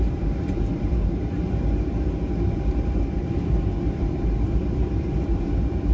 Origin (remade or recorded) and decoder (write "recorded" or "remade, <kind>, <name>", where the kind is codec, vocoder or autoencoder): remade, vocoder, BigVGAN v2